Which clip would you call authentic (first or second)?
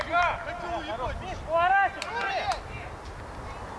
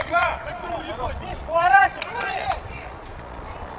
first